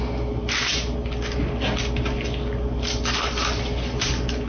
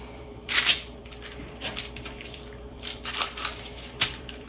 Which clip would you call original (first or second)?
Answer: first